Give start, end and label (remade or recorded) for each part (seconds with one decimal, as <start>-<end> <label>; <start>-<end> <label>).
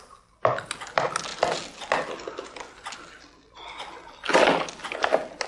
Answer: 0.0-5.5 recorded